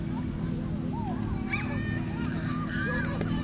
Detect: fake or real real